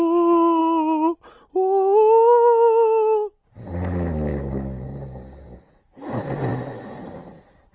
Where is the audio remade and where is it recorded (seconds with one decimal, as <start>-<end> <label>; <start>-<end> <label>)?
0.0-4.3 recorded; 4.3-5.7 remade; 5.7-7.7 recorded